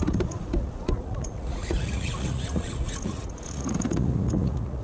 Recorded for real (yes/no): no